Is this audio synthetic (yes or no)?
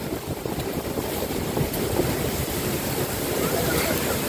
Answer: yes